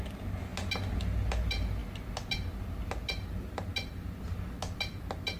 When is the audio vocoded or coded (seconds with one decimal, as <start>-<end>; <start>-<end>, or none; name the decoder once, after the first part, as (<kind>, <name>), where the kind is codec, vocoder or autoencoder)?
none

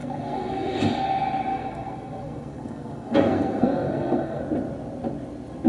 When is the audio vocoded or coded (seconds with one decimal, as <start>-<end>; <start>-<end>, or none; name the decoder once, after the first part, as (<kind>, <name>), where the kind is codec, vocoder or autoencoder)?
0.0-0.8 (codec, SNAC); 1.5-4.4

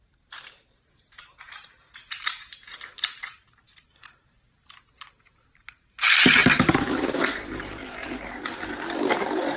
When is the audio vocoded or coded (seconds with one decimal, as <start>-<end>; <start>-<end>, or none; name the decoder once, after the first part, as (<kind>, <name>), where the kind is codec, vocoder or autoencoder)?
0.0-9.6 (vocoder, BigVGAN v2)

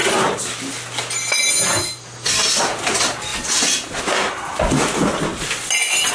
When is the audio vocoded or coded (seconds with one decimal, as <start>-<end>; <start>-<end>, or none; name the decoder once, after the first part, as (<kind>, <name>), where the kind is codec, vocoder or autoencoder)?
none